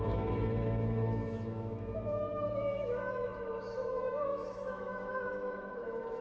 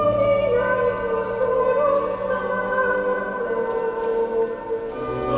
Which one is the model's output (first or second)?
first